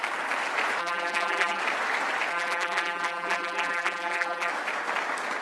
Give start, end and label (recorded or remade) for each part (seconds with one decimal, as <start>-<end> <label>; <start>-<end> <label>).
0.0-0.8 recorded; 0.8-1.6 remade; 1.6-2.3 recorded; 2.3-4.5 remade; 4.5-5.4 recorded